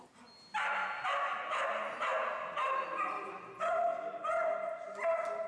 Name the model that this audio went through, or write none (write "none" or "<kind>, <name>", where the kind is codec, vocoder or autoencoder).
none